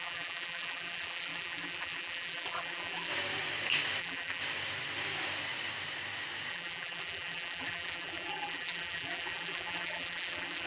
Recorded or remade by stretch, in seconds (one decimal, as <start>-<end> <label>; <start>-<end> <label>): 0.0-3.1 remade; 3.1-4.0 recorded; 4.0-4.4 remade; 4.4-6.5 recorded; 6.5-10.7 remade